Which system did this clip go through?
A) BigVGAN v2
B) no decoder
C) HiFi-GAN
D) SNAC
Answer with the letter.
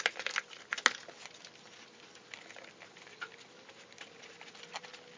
B